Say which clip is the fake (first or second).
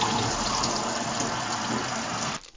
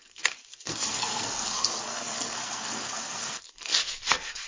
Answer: second